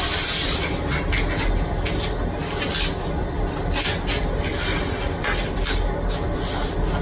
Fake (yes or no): no